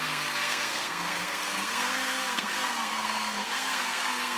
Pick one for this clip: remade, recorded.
remade